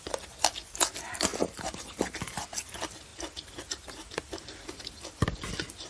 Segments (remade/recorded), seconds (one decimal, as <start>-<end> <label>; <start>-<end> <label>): 0.0-3.1 recorded; 3.1-4.8 remade; 4.8-5.9 recorded